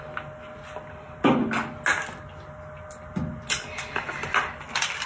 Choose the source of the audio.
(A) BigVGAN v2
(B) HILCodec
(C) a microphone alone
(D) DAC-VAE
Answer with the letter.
C